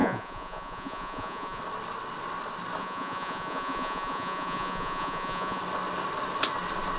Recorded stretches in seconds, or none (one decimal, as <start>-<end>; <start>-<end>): 1.6-2.8; 5.6-7.0